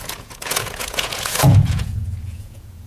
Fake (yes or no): yes